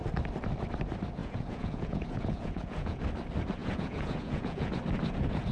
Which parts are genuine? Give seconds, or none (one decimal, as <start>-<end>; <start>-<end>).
0.0-1.2; 3.0-3.6; 4.7-5.5